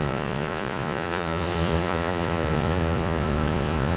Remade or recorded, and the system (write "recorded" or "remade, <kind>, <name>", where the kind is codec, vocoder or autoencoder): remade, vocoder, Vocos